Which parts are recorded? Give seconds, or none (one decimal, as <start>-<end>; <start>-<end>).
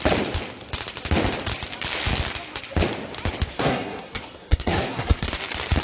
0.0-3.5; 5.3-5.8